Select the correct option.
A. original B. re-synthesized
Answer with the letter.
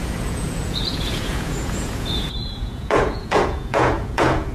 B